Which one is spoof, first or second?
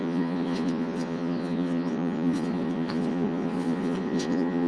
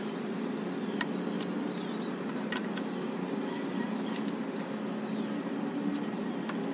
first